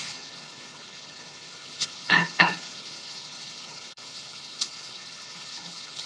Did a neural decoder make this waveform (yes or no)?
yes